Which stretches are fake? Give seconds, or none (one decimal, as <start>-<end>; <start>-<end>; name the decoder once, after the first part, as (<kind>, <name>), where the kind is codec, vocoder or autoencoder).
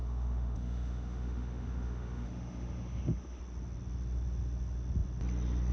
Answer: 0.0-3.4 (autoencoder, DAC-VAE)